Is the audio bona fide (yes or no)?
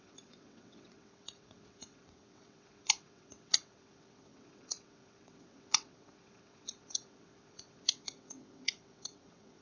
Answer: no